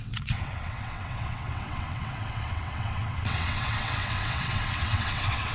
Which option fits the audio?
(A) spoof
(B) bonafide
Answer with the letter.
A